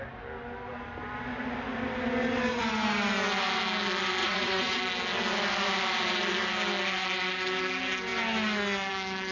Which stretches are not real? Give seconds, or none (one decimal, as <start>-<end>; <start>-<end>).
4.2-4.8